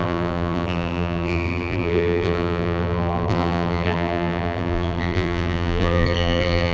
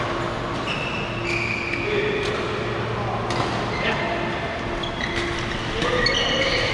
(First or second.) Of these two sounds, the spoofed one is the first